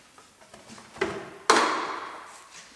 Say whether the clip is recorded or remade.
recorded